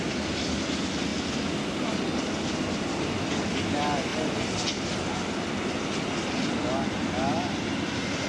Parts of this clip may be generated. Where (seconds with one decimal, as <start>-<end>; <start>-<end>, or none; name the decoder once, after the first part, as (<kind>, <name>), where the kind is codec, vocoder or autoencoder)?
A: none